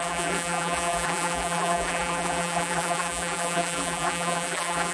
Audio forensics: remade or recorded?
remade